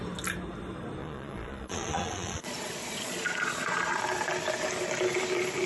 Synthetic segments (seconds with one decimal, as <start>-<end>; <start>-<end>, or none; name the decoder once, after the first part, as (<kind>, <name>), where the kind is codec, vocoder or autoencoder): 1.0-4.0 (vocoder, Vocos)